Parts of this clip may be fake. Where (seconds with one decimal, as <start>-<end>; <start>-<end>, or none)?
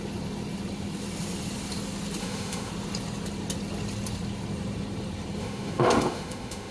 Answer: 2.2-2.7; 5.4-6.7